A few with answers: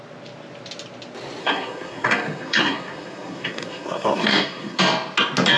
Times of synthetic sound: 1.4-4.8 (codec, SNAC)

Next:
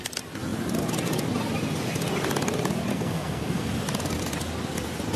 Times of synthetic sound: 2.9-3.7 (codec, SNAC)